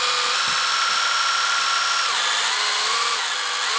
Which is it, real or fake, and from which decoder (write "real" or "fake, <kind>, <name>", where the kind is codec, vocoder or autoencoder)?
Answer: real